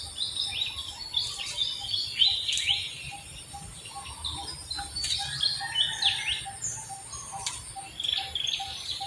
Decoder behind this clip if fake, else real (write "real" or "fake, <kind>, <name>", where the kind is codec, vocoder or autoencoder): real